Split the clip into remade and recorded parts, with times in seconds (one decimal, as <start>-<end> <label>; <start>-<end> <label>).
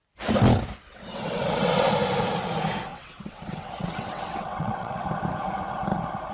0.0-0.9 recorded; 0.9-1.9 remade; 1.9-2.9 recorded; 2.9-5.1 remade; 5.1-6.3 recorded